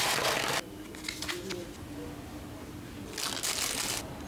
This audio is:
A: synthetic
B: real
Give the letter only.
B